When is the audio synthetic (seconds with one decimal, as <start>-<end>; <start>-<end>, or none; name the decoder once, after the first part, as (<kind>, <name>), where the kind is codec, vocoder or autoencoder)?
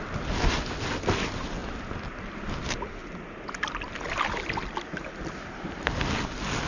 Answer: none